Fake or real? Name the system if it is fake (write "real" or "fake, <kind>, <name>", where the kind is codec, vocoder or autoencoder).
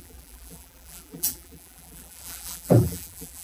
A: fake, vocoder, BigVGAN v2